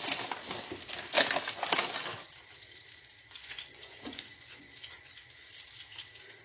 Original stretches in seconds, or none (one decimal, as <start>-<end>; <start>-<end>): 0.0-3.4; 5.5-6.4